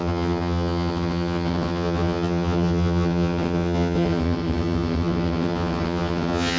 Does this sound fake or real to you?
fake